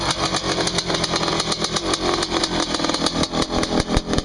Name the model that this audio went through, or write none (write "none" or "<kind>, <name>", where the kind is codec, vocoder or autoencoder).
none